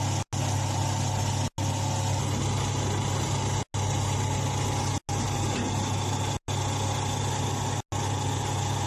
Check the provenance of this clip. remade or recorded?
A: recorded